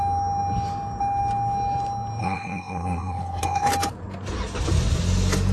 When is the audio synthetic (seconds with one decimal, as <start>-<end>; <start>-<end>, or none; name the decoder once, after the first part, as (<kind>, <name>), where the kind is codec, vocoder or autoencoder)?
2.2-3.7 (codec, SNAC)